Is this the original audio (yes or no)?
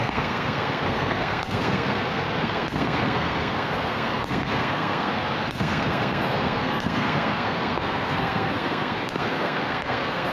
no